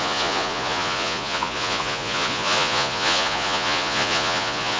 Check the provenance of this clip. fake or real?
fake